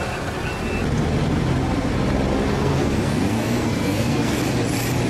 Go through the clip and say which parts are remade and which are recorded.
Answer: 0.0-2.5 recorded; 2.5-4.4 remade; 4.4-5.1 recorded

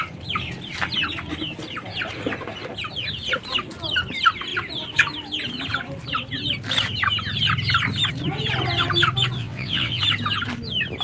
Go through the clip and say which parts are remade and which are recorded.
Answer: 0.0-9.4 recorded; 9.4-10.0 remade; 10.0-11.0 recorded

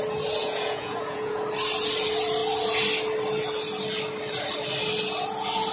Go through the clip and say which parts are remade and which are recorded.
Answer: 0.0-0.4 recorded; 0.4-1.3 remade; 1.3-5.7 recorded